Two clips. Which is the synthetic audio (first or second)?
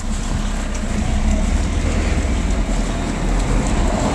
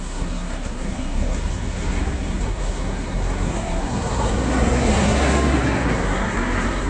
second